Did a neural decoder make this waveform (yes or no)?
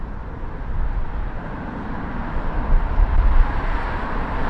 no